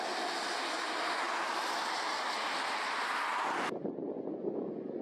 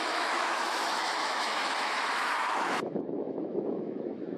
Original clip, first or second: first